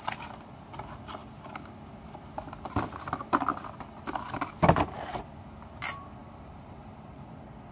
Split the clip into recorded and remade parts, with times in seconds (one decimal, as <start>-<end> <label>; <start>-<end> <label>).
0.0-6.2 recorded; 6.2-7.3 remade; 7.3-7.7 recorded